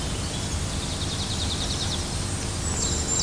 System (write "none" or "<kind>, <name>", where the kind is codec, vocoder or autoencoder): none